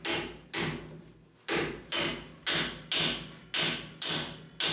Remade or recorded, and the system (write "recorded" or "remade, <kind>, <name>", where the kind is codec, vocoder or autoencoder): recorded